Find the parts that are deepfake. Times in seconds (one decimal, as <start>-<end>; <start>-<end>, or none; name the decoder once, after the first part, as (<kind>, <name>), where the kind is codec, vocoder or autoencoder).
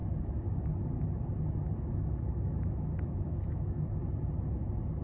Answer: 2.1-4.0 (autoencoder, DAC-VAE)